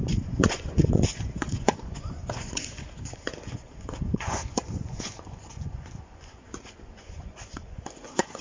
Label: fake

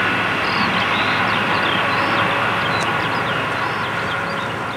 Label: real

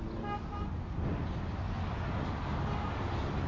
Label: real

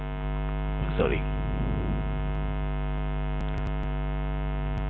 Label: real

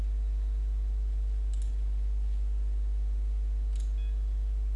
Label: real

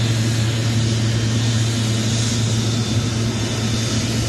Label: real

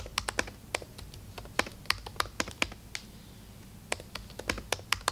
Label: real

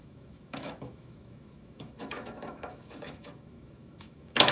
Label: fake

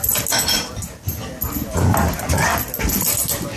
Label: real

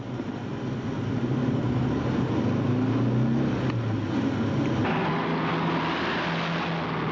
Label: real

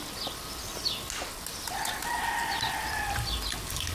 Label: real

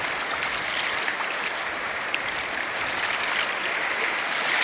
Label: real